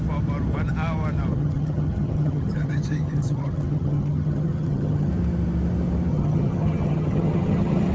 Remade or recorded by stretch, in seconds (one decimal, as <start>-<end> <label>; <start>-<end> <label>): 0.0-1.3 recorded; 1.3-5.1 remade; 5.1-6.1 recorded; 6.1-7.9 remade